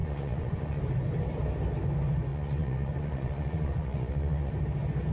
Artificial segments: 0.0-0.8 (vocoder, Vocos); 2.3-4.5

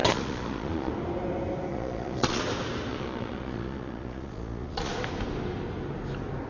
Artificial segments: 0.0-0.9 (vocoder, Vocos); 1.7-2.4; 2.9-4.9

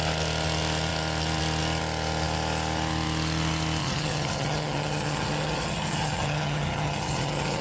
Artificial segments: 3.8-7.6 (vocoder, HiFi-GAN)

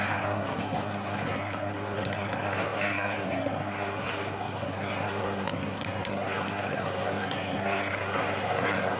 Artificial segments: 0.0-9.0 (codec, SNAC)

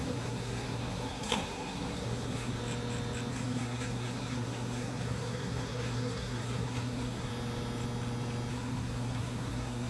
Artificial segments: 0.0-2.6 (codec, SNAC); 3.3-7.3; 8.5-9.9

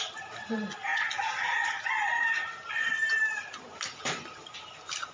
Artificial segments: 0.0-5.1 (vocoder, BigVGAN v2)

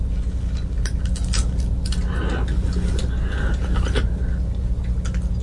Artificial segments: none